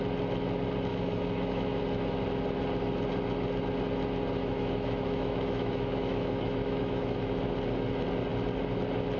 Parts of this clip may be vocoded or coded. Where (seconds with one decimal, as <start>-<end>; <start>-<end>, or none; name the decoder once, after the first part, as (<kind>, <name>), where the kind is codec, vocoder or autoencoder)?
0.9-1.8 (autoencoder, DAC-VAE); 4.4-7.4

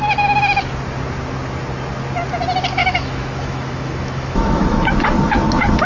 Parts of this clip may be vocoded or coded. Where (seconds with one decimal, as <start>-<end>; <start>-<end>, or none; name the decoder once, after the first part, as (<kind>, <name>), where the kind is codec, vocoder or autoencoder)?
2.8-4.9 (autoencoder, DAC-VAE)

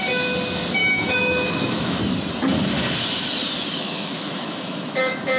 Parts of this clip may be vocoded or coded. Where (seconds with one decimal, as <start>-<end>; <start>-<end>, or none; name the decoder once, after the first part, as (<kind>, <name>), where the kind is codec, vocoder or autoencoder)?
0.8-2.0 (autoencoder, DAC-VAE); 3.7-5.4

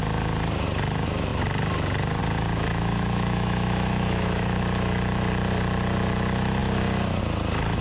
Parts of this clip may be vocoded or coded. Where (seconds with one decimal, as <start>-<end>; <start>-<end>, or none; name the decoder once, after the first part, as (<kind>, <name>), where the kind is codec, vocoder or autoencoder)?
2.7-4.6 (autoencoder, DAC-VAE)

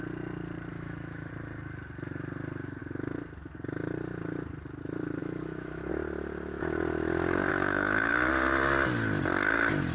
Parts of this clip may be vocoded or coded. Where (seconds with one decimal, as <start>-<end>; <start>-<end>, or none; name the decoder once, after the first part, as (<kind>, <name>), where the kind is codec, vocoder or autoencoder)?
0.7-1.3 (autoencoder, DAC-VAE); 5.2-5.9; 7.5-8.3

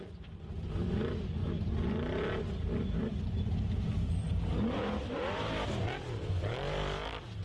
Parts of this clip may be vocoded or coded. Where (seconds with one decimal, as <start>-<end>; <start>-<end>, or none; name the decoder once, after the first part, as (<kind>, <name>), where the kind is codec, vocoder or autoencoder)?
none

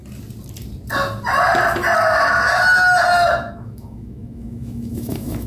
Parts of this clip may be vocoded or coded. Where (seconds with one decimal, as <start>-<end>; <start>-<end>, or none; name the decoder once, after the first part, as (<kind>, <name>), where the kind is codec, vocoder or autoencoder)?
3.3-5.5 (autoencoder, DAC-VAE)